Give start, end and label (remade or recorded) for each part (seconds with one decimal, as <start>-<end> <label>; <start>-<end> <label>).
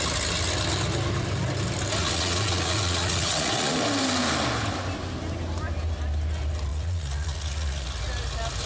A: 0.0-2.0 recorded; 2.0-3.8 remade; 3.8-6.7 recorded; 6.7-8.0 remade; 8.0-8.7 recorded